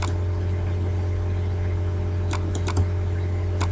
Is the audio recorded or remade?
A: recorded